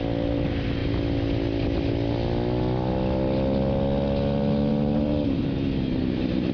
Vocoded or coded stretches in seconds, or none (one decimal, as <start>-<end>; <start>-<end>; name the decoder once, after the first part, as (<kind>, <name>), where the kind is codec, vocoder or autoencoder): none